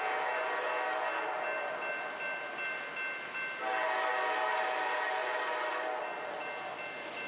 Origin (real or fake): real